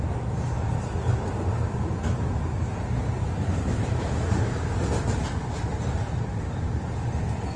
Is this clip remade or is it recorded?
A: recorded